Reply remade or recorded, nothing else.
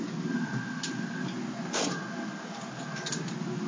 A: recorded